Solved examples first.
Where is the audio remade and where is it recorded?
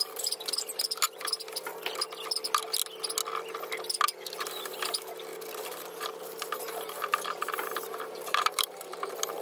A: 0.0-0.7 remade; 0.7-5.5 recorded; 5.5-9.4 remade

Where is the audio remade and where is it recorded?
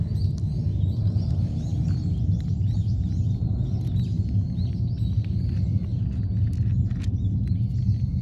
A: 0.0-8.2 recorded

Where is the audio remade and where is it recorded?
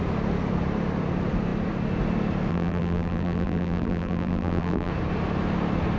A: 0.0-2.5 recorded; 2.5-4.9 remade; 4.9-6.0 recorded